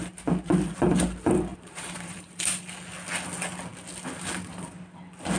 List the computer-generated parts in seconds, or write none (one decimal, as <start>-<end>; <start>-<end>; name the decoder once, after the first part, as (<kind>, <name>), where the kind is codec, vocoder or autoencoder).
1.5-2.6 (vocoder, BigVGAN v2)